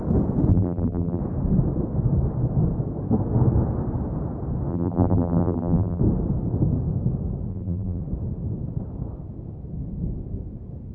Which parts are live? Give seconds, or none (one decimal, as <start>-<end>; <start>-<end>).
0.0-0.5; 1.2-4.7; 6.0-7.5; 8.0-10.9